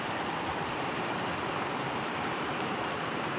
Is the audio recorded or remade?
remade